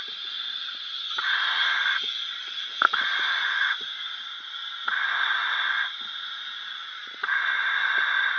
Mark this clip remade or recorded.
recorded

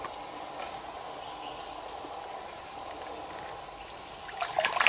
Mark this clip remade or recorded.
recorded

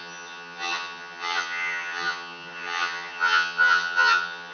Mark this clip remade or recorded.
remade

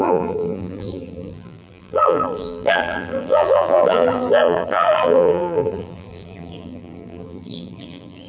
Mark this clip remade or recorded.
remade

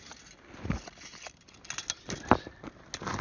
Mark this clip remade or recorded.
recorded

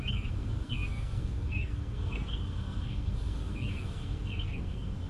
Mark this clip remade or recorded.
remade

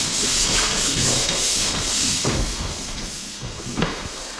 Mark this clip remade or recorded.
remade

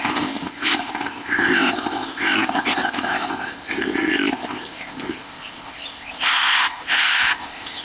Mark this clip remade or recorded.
remade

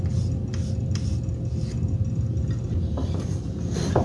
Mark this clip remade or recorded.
recorded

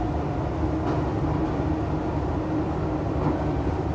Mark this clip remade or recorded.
recorded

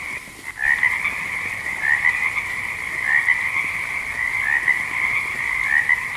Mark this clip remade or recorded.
recorded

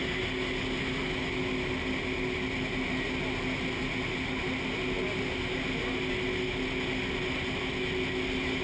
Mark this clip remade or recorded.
recorded